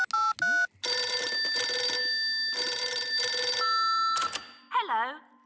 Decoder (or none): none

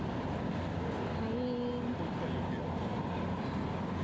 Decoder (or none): none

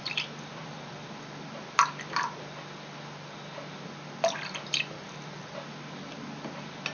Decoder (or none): none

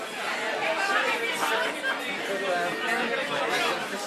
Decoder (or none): none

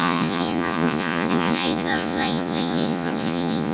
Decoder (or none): vocoder, Vocos